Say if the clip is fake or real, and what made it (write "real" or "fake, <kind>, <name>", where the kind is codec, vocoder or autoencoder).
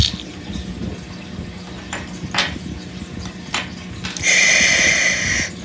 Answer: real